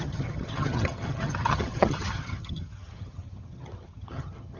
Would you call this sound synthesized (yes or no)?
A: yes